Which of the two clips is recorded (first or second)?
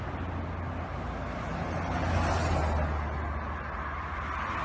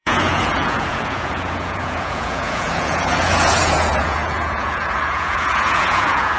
first